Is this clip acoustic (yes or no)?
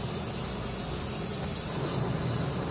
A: yes